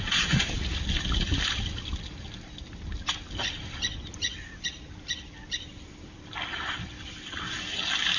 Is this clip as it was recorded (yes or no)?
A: yes